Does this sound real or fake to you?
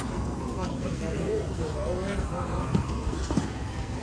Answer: fake